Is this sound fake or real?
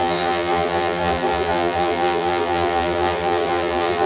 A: fake